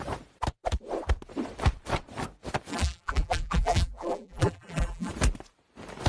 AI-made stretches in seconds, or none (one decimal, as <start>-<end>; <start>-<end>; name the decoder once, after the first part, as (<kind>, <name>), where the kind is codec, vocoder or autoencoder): 2.7-5.1 (vocoder, BigVGAN v2)